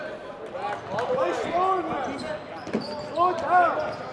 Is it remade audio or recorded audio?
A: recorded